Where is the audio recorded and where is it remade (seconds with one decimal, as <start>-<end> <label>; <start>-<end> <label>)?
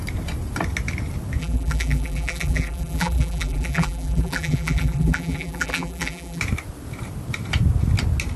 0.0-1.4 recorded; 1.4-6.4 remade; 6.4-8.4 recorded